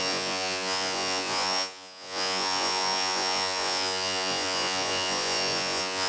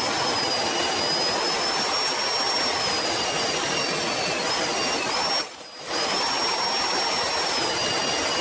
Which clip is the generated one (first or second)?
first